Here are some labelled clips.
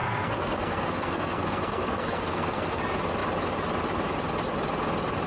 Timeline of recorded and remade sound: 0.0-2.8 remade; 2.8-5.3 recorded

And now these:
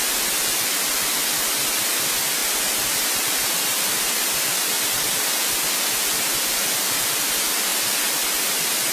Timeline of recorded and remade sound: 0.0-8.9 recorded

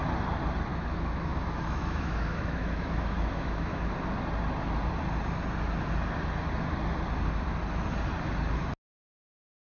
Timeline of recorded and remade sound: 0.0-0.7 recorded; 0.7-3.9 remade; 3.9-9.7 recorded

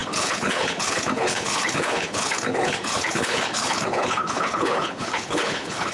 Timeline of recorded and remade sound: 0.0-5.9 remade

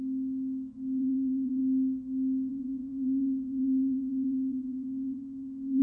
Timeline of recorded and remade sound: 0.0-1.0 recorded; 1.0-1.6 remade; 1.6-2.5 recorded; 2.5-5.8 remade

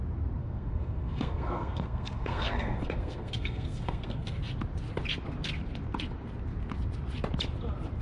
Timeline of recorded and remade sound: 0.0-0.4 recorded; 0.4-4.4 remade; 4.4-8.0 recorded

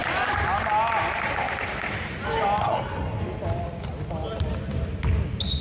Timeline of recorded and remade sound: 0.0-2.6 recorded; 2.6-3.2 remade; 3.2-5.6 recorded